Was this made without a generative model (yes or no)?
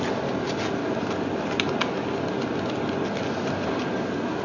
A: yes